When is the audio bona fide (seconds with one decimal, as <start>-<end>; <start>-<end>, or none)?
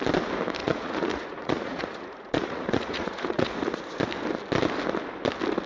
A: 0.0-0.6; 4.0-5.7